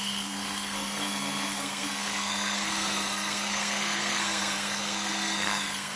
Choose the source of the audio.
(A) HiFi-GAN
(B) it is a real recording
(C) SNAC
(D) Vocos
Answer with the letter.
C